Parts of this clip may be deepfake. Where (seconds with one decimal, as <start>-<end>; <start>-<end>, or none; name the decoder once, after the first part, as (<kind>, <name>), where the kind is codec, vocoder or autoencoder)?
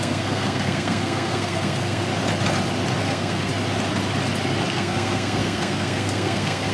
0.0-2.1 (codec, SNAC); 3.0-3.5; 4.7-6.7